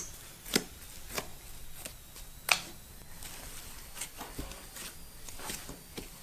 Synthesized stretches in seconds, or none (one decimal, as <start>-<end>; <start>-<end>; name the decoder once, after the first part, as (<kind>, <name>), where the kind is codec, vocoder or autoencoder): none